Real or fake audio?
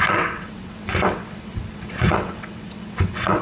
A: fake